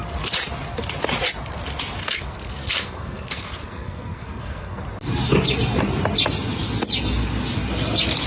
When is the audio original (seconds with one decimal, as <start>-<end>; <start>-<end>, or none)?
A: 0.0-2.0; 4.8-8.3